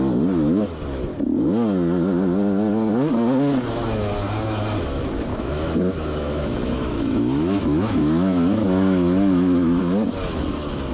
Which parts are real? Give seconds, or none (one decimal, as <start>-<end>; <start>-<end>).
0.0-5.3; 9.8-10.9